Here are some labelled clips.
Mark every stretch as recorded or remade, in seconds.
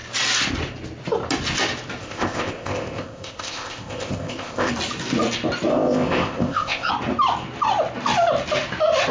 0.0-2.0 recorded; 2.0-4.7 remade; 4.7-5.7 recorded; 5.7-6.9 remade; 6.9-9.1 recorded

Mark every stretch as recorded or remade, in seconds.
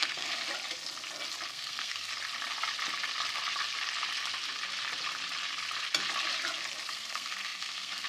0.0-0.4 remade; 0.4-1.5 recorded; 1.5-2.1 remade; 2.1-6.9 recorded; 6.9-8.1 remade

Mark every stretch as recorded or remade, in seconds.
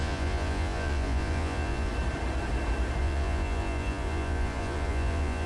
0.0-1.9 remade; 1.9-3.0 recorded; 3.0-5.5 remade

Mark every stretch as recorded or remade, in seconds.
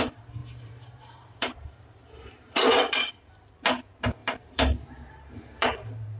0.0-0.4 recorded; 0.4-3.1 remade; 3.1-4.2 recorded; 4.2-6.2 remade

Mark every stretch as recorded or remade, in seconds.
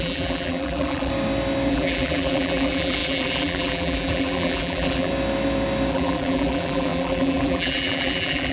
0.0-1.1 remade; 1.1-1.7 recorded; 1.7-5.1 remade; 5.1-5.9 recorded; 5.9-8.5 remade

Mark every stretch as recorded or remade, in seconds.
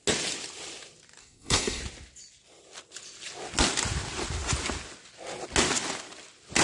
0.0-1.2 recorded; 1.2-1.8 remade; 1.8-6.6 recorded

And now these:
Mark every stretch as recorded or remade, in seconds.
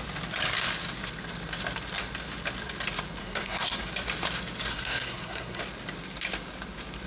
0.0-3.2 recorded; 3.2-3.9 remade; 3.9-4.7 recorded; 4.7-5.6 remade; 5.6-7.1 recorded